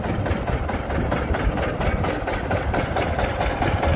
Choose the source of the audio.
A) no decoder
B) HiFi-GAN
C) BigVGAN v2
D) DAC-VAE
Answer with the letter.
A